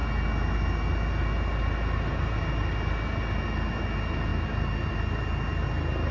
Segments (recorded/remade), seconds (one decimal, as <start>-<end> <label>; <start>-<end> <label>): 0.0-6.1 recorded